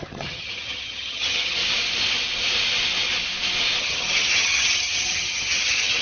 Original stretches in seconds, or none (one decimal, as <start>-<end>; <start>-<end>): 1.6-3.8